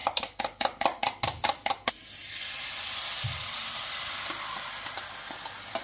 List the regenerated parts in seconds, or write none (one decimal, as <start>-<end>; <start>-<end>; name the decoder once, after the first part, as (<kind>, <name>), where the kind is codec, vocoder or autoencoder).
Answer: none